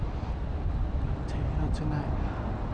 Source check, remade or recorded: recorded